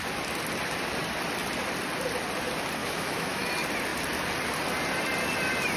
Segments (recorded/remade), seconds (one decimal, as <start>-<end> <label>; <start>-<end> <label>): 0.0-2.8 recorded; 2.8-3.5 remade; 3.5-5.8 recorded